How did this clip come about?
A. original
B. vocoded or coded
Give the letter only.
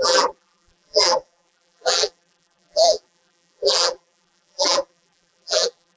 B